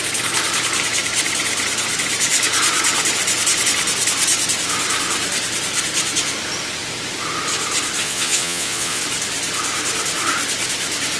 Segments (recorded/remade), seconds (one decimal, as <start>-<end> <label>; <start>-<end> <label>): 0.0-8.0 recorded; 8.0-9.0 remade; 9.0-11.2 recorded